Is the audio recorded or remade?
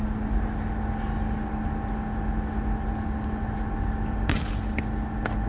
recorded